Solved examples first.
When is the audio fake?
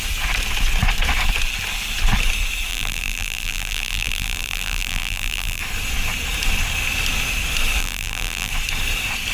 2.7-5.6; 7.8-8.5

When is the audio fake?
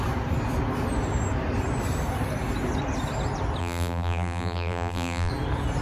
3.6-5.3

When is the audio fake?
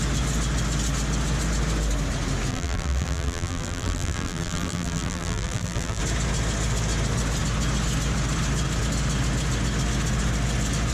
2.5-6.0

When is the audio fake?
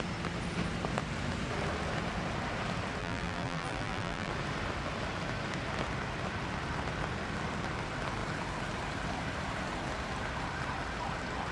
3.0-4.3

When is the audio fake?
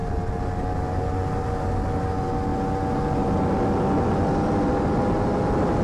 none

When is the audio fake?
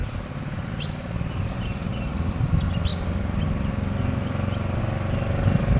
0.0-0.7